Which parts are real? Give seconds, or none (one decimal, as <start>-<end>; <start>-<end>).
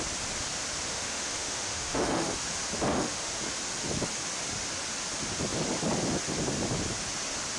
0.0-0.9; 2.3-2.9; 3.4-7.6